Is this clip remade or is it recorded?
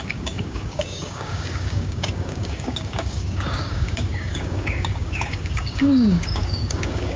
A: remade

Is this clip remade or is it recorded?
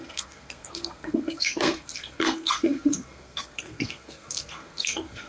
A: remade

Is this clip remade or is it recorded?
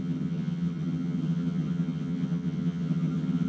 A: remade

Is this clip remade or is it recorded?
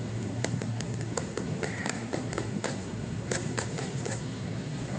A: remade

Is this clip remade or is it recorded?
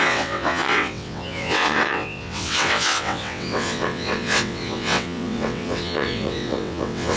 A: remade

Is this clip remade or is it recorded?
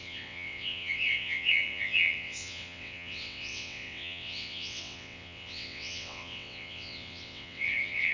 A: remade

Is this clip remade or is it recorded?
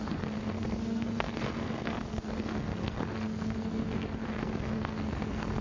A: remade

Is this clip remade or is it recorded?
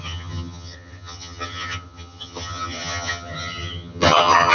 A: remade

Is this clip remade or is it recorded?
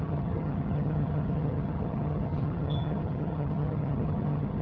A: remade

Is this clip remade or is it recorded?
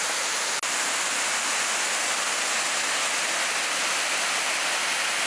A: recorded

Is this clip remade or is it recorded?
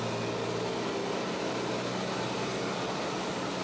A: recorded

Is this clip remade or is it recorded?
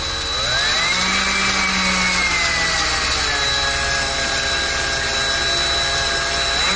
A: recorded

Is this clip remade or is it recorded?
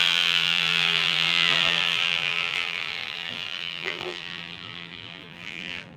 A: remade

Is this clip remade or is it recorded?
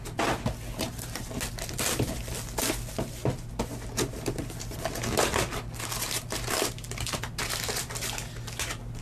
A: recorded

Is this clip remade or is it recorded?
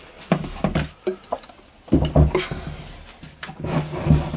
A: recorded